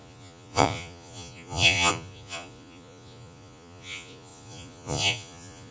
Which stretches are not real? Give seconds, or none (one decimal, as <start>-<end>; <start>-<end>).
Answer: 0.0-5.7